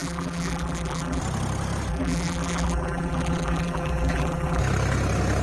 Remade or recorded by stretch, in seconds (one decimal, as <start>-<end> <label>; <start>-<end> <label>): 0.0-1.2 remade; 1.2-1.9 recorded; 1.9-4.6 remade; 4.6-5.4 recorded